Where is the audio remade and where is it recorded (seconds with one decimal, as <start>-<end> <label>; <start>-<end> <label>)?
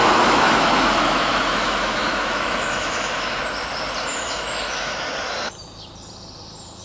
0.0-3.4 remade; 3.4-4.1 recorded; 4.1-5.1 remade; 5.1-6.8 recorded